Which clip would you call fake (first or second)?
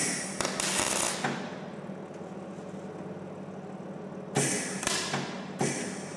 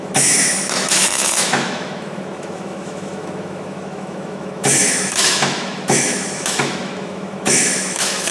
second